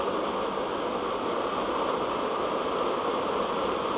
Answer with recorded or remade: recorded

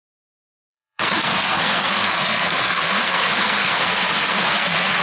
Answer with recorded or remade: remade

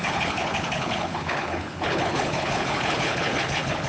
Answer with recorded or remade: remade